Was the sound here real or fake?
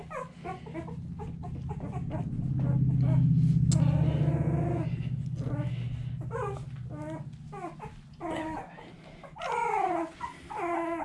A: real